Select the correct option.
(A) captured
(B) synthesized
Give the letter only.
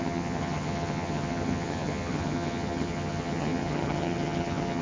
B